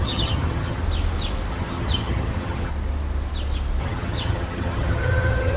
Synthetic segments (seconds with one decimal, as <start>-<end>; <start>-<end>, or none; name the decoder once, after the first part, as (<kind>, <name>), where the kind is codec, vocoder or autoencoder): 0.0-0.8 (vocoder, HiFi-GAN); 1.5-2.7; 3.8-5.6